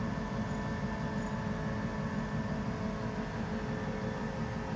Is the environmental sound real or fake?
real